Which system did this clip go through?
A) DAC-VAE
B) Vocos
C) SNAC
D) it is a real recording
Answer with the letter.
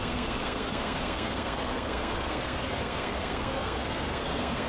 C